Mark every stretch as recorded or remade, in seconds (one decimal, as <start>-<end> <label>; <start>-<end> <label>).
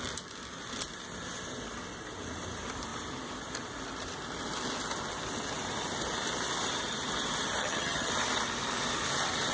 0.0-7.6 recorded; 7.6-8.1 remade; 8.1-9.5 recorded